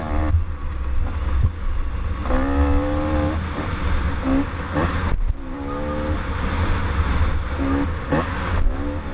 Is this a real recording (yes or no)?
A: yes